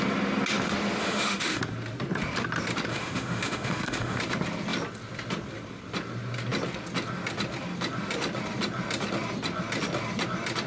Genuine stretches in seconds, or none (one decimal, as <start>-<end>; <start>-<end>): 0.0-1.0; 1.6-2.9; 4.2-10.7